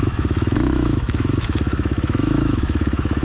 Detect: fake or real fake